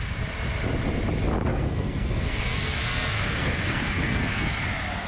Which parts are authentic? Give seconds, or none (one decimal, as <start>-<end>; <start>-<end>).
0.0-1.5; 4.6-5.1